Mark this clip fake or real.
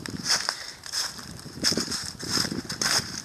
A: fake